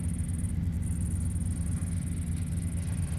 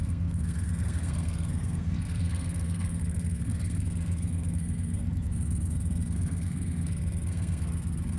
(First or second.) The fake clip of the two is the second